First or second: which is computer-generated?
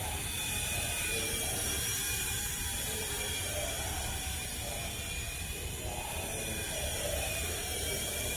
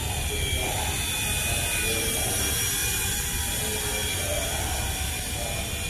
first